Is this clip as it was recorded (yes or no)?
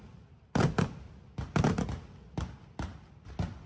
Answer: yes